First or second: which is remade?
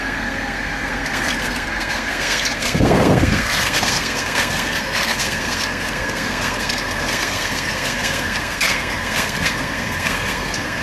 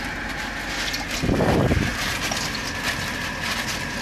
first